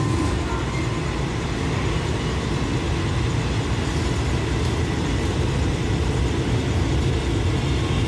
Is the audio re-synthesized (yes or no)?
no